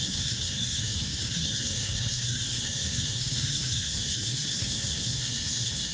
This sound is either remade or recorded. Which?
remade